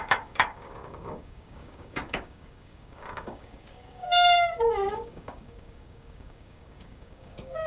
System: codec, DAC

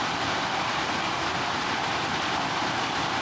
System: none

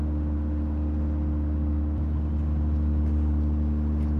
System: none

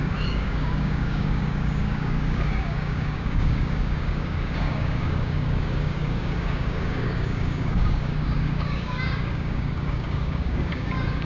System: codec, DAC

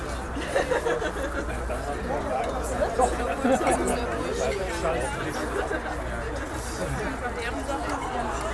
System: none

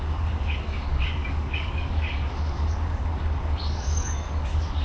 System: codec, DAC